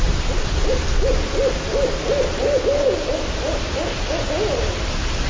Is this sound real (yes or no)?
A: yes